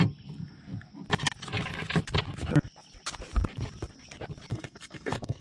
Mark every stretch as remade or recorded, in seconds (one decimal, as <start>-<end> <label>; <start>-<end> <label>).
0.0-4.5 recorded; 4.5-5.4 remade